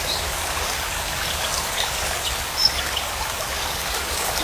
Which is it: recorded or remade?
remade